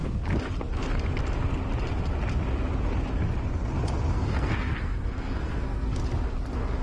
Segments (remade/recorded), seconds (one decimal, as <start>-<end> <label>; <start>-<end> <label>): 0.0-4.1 recorded; 4.1-6.0 remade; 6.0-6.8 recorded